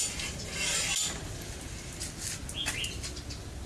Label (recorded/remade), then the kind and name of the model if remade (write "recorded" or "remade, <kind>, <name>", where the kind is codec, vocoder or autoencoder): recorded